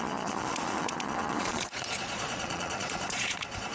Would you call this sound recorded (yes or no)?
no